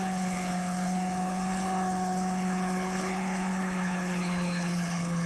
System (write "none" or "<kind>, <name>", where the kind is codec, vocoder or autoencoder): codec, HILCodec